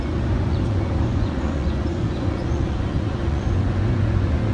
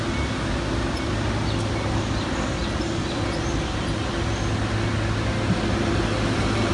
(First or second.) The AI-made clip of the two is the first